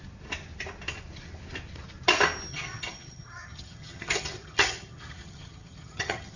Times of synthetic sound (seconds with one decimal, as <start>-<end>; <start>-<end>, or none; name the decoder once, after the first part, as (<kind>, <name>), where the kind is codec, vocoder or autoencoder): 2.5-6.4 (vocoder, HiFi-GAN)